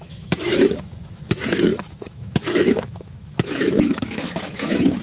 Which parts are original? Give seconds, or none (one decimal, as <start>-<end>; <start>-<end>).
none